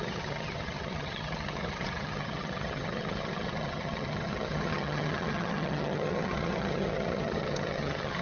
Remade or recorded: remade